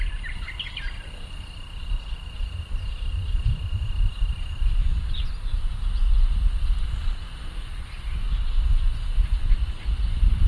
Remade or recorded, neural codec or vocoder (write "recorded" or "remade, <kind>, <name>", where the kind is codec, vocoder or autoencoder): recorded